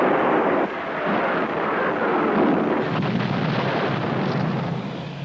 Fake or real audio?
real